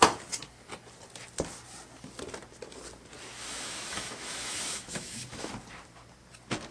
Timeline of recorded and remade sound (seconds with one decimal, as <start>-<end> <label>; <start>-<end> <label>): 0.0-3.3 recorded; 3.3-5.5 remade; 5.5-6.7 recorded